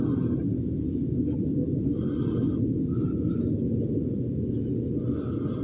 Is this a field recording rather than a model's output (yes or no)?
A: yes